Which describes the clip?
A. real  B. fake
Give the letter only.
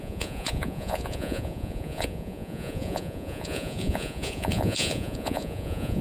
B